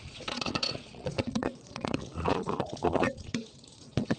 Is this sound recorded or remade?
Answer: remade